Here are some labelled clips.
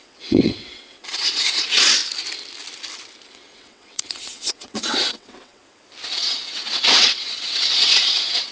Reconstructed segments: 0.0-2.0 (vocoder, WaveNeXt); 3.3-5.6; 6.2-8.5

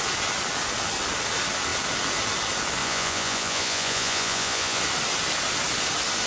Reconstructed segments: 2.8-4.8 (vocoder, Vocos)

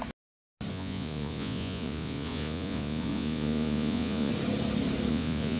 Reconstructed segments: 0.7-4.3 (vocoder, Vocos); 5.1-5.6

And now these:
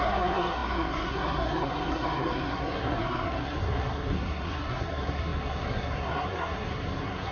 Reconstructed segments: 0.0-7.3 (codec, SNAC)